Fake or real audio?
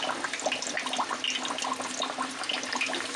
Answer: real